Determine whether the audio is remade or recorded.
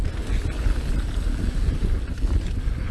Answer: recorded